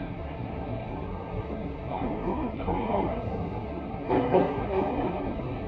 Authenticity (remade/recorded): remade